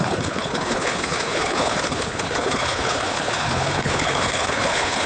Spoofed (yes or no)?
yes